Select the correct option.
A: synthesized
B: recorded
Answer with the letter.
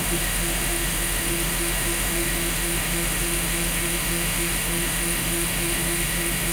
A